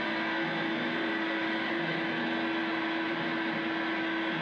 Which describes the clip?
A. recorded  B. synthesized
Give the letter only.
A